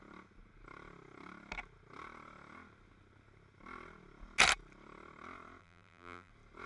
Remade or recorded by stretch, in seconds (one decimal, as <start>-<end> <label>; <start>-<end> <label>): 0.0-5.6 recorded; 5.6-6.3 remade; 6.3-6.7 recorded